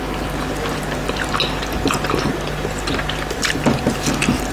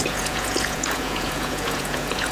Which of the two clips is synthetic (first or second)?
second